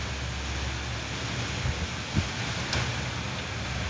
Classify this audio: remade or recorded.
recorded